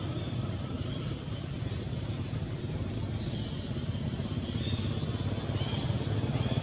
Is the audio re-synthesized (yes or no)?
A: no